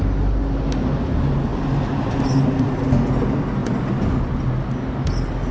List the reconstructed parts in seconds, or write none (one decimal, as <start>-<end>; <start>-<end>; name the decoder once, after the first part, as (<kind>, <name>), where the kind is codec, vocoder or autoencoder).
none